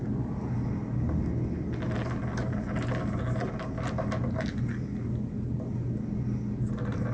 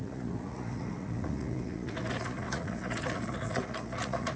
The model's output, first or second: second